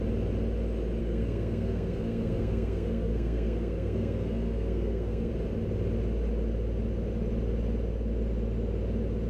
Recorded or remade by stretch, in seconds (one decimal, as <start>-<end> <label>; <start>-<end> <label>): 0.0-1.0 recorded; 1.0-5.3 remade; 5.3-9.3 recorded